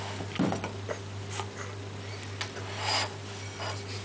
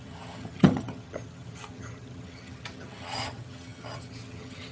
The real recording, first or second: first